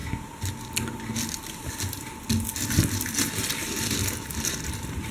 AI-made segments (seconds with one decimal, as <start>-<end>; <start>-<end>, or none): none